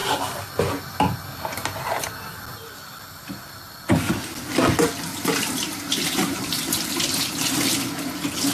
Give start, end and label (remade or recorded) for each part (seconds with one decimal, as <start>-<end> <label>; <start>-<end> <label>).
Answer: 0.0-5.1 recorded; 5.1-7.3 remade; 7.3-8.5 recorded